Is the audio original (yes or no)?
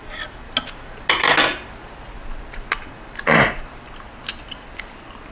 yes